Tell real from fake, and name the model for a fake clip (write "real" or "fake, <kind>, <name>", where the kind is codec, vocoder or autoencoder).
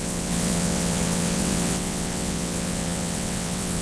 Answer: fake, vocoder, WaveNeXt